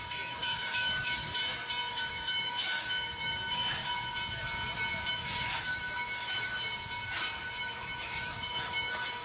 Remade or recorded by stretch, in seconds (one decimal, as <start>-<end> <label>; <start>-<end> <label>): 0.0-1.4 remade; 1.4-1.9 recorded; 1.9-3.8 remade; 3.8-5.1 recorded; 5.1-6.7 remade; 6.7-7.6 recorded; 7.6-9.2 remade